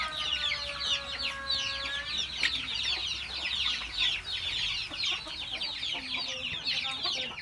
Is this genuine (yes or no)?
yes